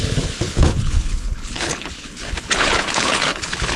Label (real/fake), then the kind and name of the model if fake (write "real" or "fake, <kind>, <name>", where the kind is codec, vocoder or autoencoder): fake, codec, HILCodec